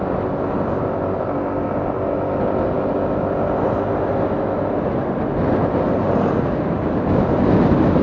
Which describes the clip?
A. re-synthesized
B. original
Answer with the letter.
B